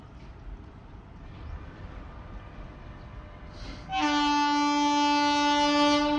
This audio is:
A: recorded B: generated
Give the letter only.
A